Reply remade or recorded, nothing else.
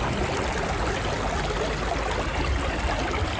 recorded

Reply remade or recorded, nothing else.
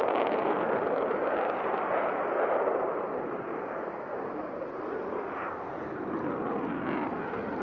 recorded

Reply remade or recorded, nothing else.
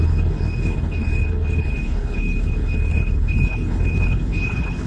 remade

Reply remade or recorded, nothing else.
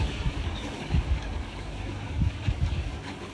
remade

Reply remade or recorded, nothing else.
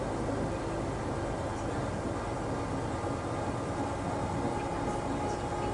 recorded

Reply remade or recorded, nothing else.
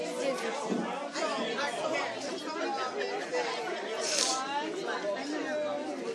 recorded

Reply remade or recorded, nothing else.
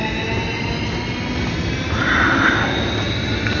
recorded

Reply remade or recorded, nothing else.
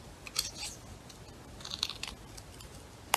recorded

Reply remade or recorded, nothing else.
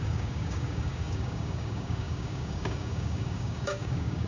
remade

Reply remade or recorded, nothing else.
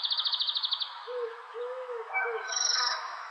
remade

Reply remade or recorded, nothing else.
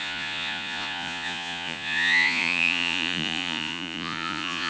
remade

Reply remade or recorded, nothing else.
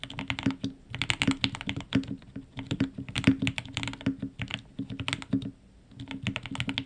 recorded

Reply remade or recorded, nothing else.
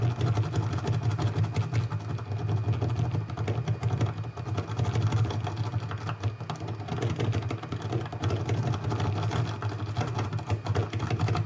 recorded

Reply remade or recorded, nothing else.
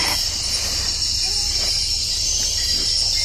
remade